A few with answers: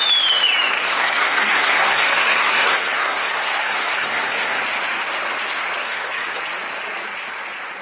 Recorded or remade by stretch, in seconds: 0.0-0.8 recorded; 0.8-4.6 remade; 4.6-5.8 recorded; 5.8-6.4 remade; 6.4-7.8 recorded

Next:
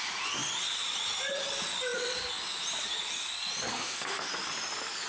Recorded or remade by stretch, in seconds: 0.0-3.7 recorded; 3.7-4.3 remade; 4.3-5.1 recorded

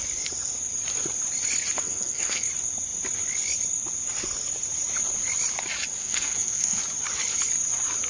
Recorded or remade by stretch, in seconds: 0.0-1.8 recorded; 1.8-2.5 remade; 2.5-6.0 recorded; 6.0-6.8 remade; 6.8-8.1 recorded